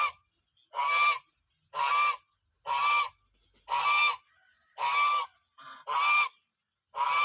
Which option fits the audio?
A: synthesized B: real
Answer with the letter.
B